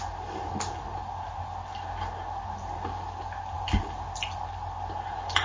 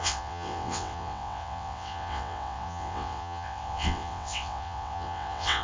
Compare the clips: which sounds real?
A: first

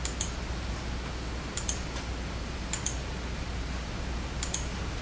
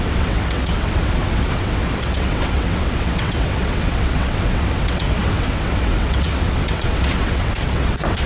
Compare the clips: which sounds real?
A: first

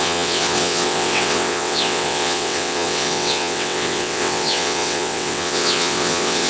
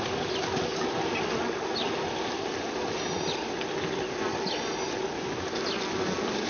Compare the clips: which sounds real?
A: second